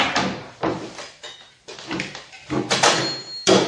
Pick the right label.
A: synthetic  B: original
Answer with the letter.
B